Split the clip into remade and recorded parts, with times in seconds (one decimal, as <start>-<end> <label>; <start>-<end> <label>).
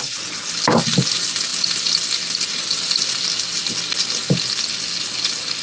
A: 0.0-5.6 recorded